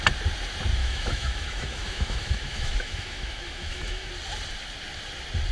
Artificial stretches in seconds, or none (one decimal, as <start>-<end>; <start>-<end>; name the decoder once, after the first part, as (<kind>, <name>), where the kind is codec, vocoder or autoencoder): 0.8-4.1 (autoencoder, DAC-VAE)